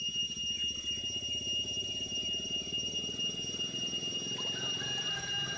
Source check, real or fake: real